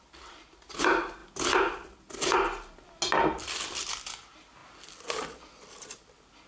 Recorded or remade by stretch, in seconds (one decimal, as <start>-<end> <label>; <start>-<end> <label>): 0.0-6.5 recorded